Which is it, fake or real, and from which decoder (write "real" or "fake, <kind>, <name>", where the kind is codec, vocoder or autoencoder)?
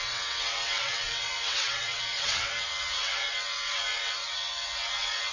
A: fake, vocoder, WaveNeXt